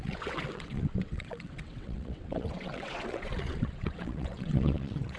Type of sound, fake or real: fake